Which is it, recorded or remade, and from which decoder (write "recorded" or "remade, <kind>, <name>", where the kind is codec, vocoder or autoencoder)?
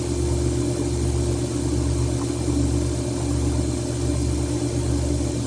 recorded